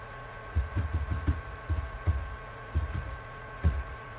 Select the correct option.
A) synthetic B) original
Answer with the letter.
A